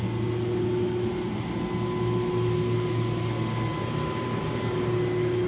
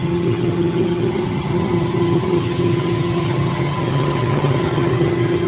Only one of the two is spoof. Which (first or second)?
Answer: second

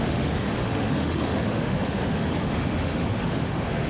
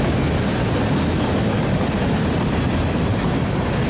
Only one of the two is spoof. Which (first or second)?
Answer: first